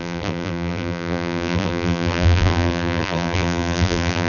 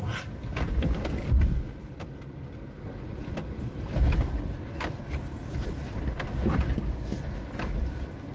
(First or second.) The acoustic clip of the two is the second